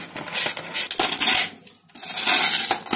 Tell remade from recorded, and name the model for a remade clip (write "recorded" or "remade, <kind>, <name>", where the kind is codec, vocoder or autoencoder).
recorded